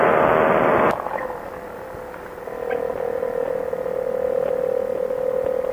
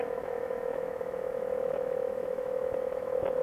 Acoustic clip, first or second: first